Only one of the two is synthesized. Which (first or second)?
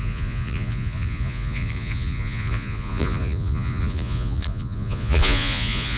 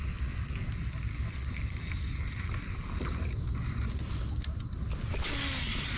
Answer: first